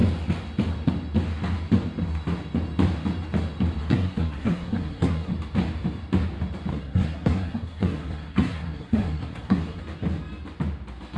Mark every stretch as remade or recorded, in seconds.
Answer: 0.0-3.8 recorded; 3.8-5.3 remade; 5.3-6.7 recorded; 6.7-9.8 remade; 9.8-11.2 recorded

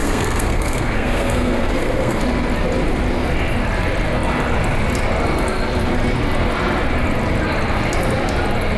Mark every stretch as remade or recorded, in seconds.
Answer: 0.0-2.2 remade; 2.2-8.8 recorded

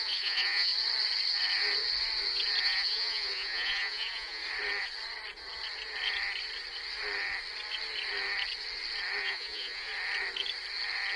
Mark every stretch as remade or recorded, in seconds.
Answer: 0.0-0.7 remade; 0.7-2.6 recorded; 2.6-4.4 remade; 4.4-9.2 recorded; 9.2-9.9 remade; 9.9-11.2 recorded

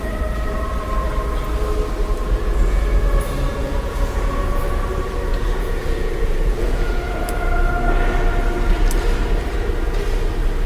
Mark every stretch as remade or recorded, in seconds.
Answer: 0.0-2.2 recorded; 2.2-3.0 remade; 3.0-3.5 recorded; 3.5-4.6 remade; 4.6-5.3 recorded; 5.3-7.0 remade; 7.0-10.7 recorded

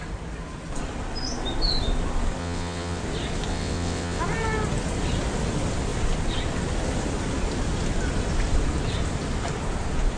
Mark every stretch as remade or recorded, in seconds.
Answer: 0.0-2.4 recorded; 2.4-3.0 remade; 3.0-3.5 recorded; 3.5-4.2 remade; 4.2-10.2 recorded